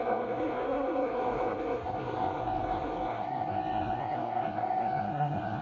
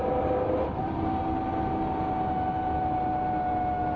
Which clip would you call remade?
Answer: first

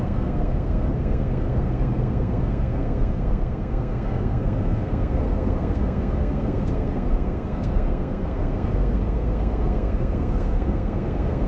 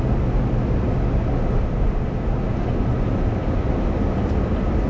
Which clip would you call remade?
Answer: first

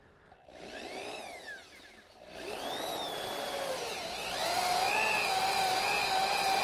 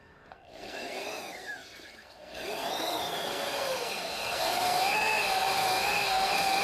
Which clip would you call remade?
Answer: second